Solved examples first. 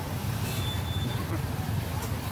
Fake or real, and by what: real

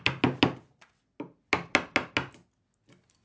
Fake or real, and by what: real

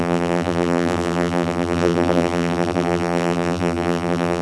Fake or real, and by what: fake, vocoder, BigVGAN v2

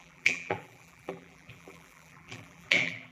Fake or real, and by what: fake, vocoder, BigVGAN v2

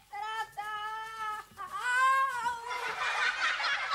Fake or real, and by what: real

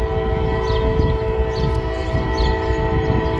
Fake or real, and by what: real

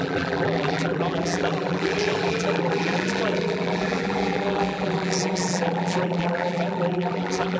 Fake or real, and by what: fake, vocoder, BigVGAN v2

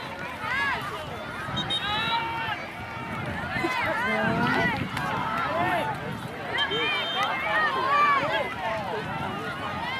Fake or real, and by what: real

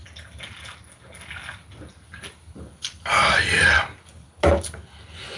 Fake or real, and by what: real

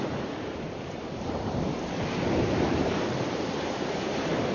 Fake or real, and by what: fake, vocoder, BigVGAN v2